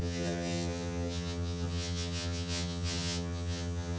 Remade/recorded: remade